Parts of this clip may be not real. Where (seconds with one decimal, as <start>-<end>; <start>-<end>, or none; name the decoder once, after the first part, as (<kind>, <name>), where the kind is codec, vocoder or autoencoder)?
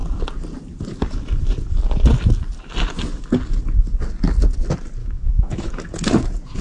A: 5.0-5.7 (autoencoder, DAC-VAE)